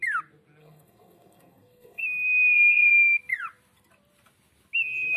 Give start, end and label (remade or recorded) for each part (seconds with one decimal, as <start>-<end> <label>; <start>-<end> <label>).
0.0-0.6 recorded; 0.6-2.9 remade; 2.9-5.2 recorded